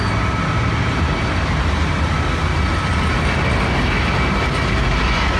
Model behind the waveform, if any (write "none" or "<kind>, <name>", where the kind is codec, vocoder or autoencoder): none